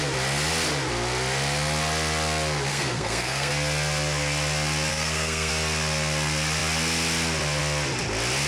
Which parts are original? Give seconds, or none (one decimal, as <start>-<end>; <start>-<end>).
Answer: 0.0-2.7; 3.5-4.9; 5.5-8.5